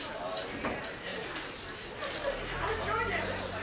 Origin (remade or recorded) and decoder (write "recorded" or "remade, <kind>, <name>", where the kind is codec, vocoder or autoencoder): recorded